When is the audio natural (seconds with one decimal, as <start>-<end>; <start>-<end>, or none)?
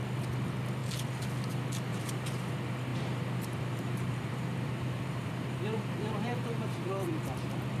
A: 0.0-1.9; 2.5-2.9; 7.1-7.8